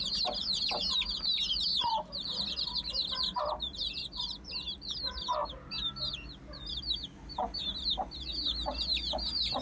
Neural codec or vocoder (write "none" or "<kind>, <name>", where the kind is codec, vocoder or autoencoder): none